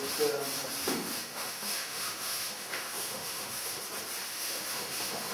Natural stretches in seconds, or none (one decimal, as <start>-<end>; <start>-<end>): 0.0-0.8; 3.8-4.3